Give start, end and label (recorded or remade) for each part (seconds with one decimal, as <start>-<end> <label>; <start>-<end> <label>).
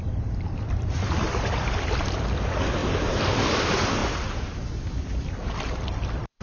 0.0-4.0 remade; 4.0-5.1 recorded; 5.1-6.4 remade